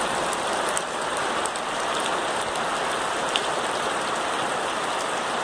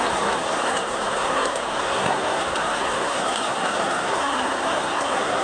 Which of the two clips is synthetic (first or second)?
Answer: second